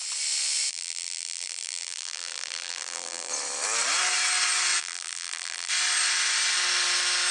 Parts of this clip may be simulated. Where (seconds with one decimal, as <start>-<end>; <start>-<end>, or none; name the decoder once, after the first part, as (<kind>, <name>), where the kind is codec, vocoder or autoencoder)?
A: 0.7-3.3 (vocoder, BigVGAN v2); 4.8-5.7